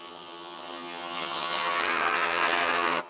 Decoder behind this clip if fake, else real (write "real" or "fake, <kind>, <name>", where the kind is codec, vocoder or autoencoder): fake, vocoder, HiFi-GAN